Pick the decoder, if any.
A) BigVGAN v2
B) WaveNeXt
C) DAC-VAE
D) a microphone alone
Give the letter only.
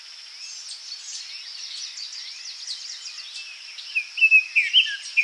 D